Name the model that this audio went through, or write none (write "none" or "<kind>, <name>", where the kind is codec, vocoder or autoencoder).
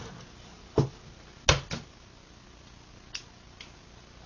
none